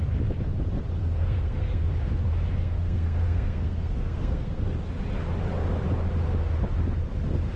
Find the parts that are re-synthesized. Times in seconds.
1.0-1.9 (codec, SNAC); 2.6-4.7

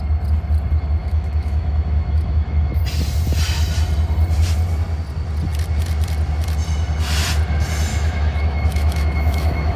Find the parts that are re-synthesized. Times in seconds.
1.0-2.8 (autoencoder, DAC-VAE); 7.9-9.8

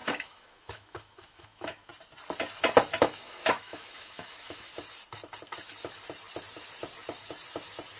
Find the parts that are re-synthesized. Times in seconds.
0.0-1.9 (autoencoder, DAC-VAE); 3.0-4.7